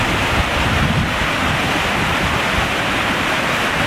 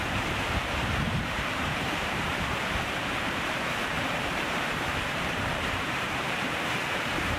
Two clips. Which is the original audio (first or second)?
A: first